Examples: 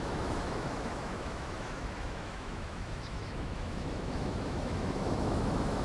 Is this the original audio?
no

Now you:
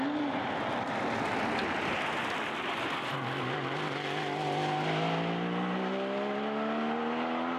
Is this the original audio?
yes